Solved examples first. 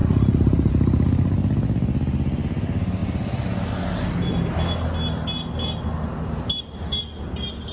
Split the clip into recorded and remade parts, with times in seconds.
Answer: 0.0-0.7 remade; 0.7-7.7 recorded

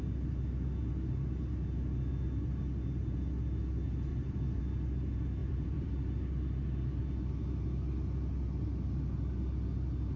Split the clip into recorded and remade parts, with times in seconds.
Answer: 0.0-4.1 recorded; 4.1-4.6 remade; 4.6-5.4 recorded; 5.4-6.0 remade; 6.0-10.2 recorded

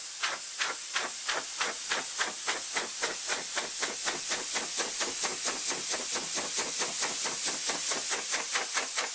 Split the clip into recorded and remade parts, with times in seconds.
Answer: 0.0-9.1 recorded

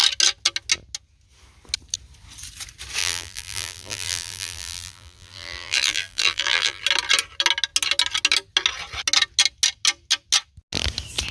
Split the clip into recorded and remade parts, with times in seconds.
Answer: 0.0-3.0 recorded; 3.0-6.8 remade; 6.8-11.3 recorded

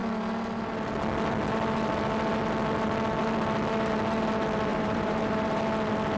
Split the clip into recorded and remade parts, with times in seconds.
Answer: 0.0-4.7 recorded; 4.7-5.6 remade; 5.6-6.2 recorded